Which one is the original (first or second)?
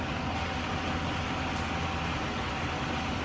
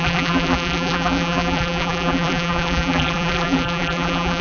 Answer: first